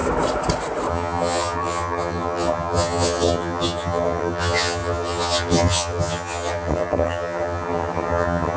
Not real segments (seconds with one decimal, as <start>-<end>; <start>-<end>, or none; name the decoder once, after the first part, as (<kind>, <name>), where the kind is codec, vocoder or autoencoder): 0.9-8.6 (vocoder, HiFi-GAN)